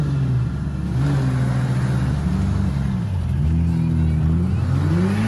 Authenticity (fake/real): real